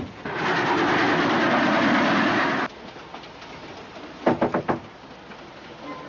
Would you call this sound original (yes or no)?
yes